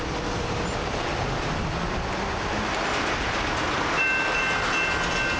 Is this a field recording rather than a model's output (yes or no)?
yes